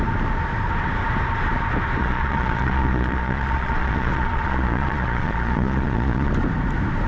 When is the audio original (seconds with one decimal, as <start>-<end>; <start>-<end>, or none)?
0.0-2.0; 6.3-7.1